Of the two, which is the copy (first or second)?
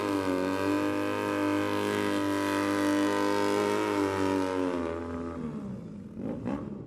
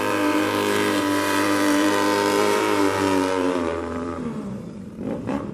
second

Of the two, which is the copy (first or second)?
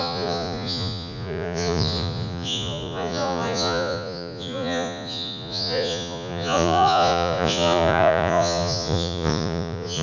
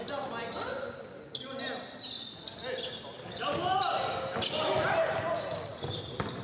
first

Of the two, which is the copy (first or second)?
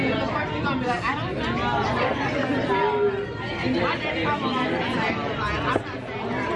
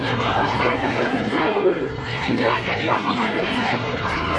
second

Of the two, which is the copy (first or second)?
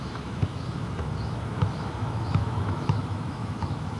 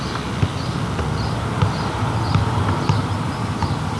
first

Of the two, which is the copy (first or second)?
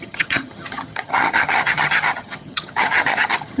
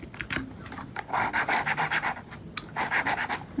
first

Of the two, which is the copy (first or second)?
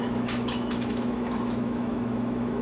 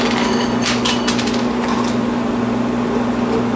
first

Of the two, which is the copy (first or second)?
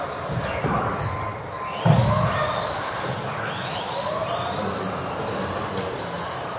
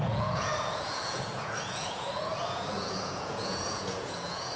second